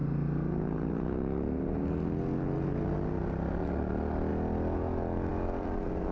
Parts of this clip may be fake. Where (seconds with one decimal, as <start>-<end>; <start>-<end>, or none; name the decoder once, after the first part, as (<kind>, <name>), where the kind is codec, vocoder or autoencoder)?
none

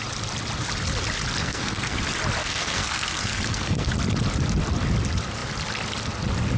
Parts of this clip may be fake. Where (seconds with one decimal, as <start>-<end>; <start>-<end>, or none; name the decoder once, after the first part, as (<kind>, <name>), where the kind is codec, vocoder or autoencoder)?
1.4-2.0 (codec, SNAC); 2.4-3.9

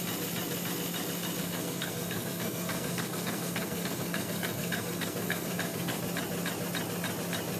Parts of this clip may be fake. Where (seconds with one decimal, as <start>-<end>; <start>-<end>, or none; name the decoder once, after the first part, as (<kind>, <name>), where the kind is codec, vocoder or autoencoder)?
1.4-6.0 (codec, SNAC)